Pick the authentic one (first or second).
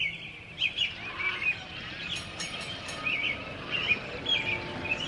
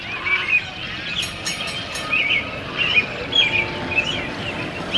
second